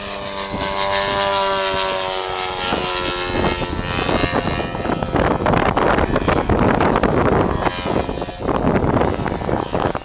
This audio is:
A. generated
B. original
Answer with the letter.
B